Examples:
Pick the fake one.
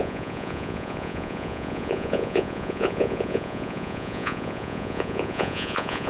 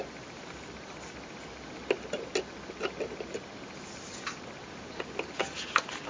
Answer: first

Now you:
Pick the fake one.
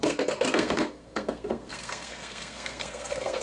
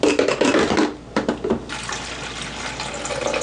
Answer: first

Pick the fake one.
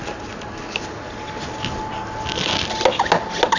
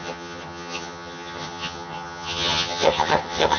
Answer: second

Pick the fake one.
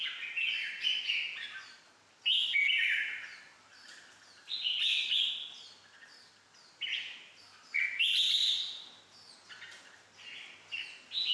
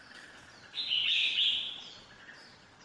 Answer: second